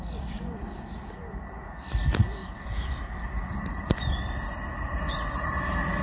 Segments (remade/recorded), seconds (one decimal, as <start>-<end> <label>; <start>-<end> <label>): 0.0-2.4 recorded; 2.4-4.1 remade; 4.1-6.0 recorded

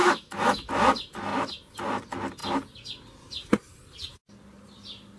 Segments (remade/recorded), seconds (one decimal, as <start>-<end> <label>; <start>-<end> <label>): 0.0-0.7 remade; 0.7-5.2 recorded

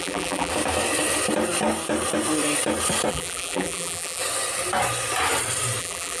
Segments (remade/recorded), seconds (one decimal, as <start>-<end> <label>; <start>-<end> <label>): 0.0-0.5 remade; 0.5-3.1 recorded; 3.1-4.2 remade; 4.2-5.8 recorded; 5.8-6.2 remade

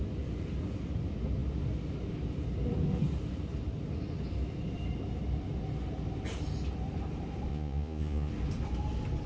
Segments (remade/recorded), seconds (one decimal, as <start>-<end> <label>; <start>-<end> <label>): 0.0-7.5 recorded; 7.5-8.3 remade; 8.3-9.3 recorded